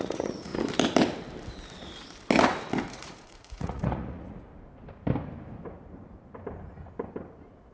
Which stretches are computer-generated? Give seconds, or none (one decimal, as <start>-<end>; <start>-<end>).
0.0-0.5; 2.9-4.5